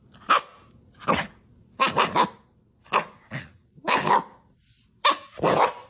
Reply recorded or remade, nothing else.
recorded